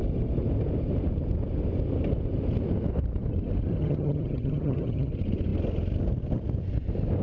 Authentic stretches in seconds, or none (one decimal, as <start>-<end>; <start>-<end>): 0.0-3.8; 5.1-7.2